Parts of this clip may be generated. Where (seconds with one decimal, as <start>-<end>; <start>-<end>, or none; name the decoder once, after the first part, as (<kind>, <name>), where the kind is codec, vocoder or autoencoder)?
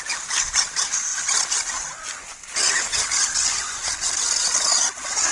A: none